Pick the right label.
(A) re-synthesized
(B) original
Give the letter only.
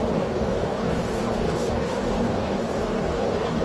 A